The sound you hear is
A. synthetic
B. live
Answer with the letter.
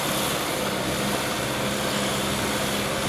B